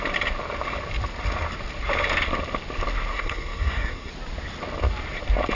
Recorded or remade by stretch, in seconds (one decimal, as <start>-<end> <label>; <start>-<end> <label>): 0.0-3.1 recorded; 3.1-4.1 remade; 4.1-5.5 recorded